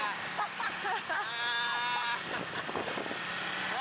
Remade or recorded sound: recorded